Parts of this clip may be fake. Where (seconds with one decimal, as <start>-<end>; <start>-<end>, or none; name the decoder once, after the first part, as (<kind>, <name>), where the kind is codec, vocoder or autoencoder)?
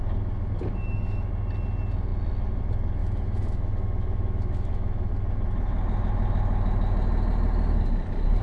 0.7-1.3 (autoencoder, DAC-VAE); 3.0-5.1